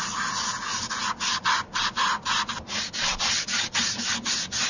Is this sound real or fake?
real